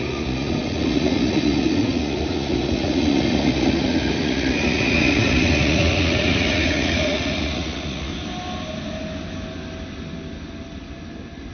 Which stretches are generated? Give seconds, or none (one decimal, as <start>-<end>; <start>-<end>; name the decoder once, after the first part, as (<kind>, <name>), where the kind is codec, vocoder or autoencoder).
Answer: 0.0-8.1 (vocoder, Vocos)

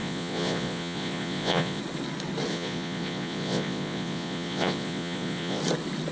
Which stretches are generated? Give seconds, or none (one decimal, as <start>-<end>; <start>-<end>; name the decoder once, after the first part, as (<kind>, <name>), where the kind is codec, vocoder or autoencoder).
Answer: 0.0-1.8 (vocoder, Vocos); 2.5-5.6

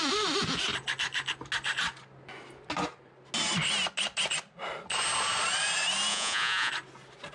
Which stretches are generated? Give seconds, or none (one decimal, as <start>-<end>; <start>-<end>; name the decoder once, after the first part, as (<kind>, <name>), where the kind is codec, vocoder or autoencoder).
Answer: 6.1-6.7 (vocoder, Vocos)

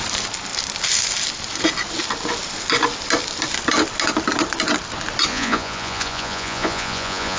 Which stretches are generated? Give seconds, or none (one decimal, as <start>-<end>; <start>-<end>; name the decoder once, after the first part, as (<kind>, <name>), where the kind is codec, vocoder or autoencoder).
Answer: 5.3-7.4 (vocoder, Vocos)